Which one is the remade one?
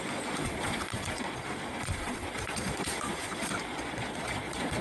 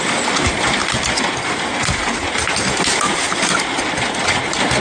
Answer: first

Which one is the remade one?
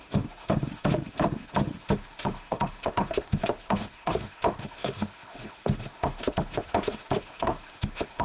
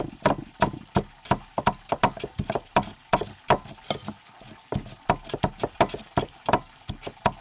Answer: first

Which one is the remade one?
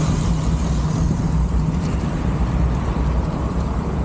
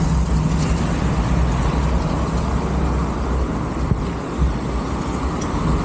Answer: first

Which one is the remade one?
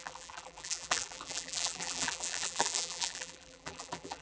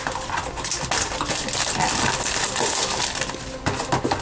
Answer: first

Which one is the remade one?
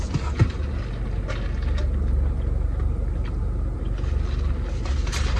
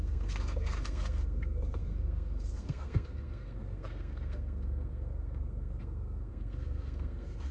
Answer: second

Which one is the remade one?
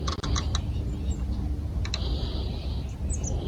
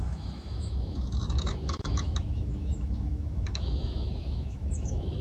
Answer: second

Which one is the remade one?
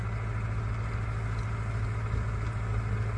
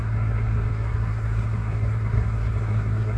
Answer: second